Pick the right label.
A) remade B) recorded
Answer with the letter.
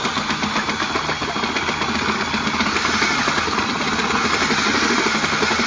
B